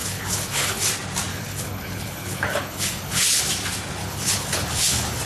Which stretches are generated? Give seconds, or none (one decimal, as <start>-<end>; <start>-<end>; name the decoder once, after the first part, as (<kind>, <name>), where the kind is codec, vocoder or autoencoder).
0.0-0.9 (codec, HILCodec); 1.3-3.4; 4.0-5.2